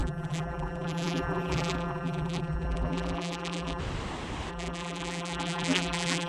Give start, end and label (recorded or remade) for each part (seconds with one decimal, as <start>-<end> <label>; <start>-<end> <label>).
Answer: 0.0-3.8 remade; 3.8-4.5 recorded; 4.5-6.3 remade